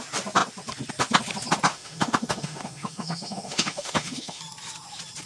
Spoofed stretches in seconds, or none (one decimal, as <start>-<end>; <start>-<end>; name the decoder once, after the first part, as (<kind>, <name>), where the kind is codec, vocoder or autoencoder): 1.7-4.4 (autoencoder, DAC-VAE)